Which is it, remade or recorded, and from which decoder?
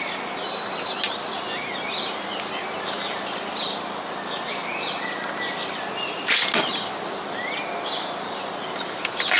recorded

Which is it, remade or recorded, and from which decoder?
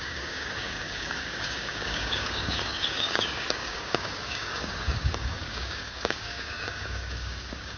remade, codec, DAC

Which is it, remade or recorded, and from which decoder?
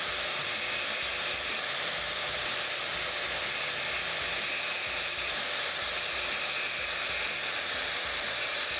remade, vocoder, BigVGAN v2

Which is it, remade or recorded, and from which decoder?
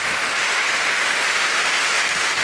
remade, autoencoder, DAC-VAE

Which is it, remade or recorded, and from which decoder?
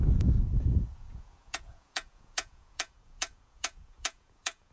remade, vocoder, Vocos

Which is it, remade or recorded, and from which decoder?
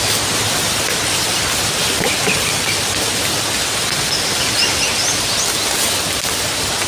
recorded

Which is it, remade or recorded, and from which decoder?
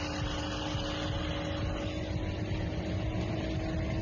recorded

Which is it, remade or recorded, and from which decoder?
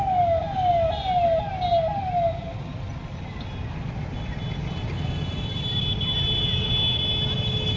recorded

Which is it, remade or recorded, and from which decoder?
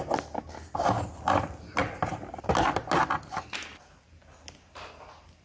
recorded